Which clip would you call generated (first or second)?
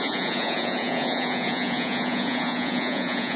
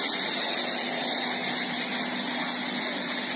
first